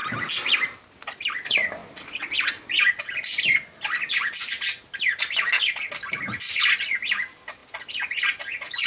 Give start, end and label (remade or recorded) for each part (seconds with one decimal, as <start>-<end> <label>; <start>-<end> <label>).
0.0-8.9 recorded